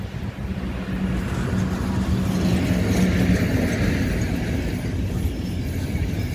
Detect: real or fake real